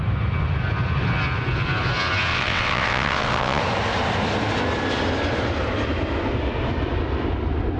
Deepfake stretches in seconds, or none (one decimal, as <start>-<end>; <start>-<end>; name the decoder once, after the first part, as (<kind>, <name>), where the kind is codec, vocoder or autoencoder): 2.3-3.6 (vocoder, WaveNeXt)

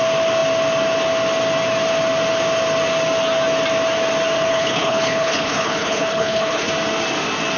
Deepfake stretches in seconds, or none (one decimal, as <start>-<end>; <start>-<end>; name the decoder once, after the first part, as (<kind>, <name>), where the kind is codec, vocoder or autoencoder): 4.5-6.7 (codec, HILCodec)

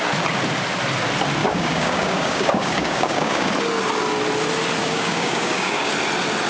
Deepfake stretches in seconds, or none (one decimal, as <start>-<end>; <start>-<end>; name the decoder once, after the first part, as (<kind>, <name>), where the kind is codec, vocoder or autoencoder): 1.4-3.5 (codec, DAC); 4.8-5.9

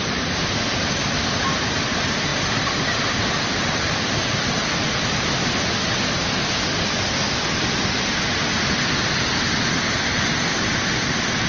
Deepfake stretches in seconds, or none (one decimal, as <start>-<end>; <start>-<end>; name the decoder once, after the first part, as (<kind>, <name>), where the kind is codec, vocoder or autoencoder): none

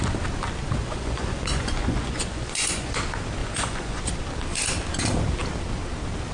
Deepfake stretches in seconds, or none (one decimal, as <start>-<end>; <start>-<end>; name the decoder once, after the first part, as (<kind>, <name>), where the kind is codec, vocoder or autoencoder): 0.8-3.0 (vocoder, Vocos); 3.4-4.0

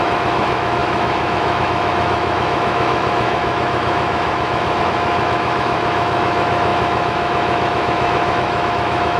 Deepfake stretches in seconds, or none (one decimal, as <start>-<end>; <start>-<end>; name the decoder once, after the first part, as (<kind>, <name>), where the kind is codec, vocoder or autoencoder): 0.0-9.2 (autoencoder, DAC-VAE)

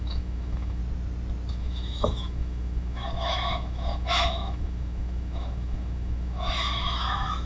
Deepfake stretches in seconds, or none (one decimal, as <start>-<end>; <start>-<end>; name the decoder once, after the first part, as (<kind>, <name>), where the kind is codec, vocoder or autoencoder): 0.0-0.8 (autoencoder, DAC-VAE); 1.5-7.5

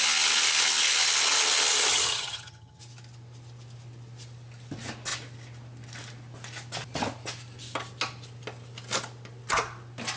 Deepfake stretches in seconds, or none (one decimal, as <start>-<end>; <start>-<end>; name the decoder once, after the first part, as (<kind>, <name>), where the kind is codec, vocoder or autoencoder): 1.9-2.8 (vocoder, HiFi-GAN)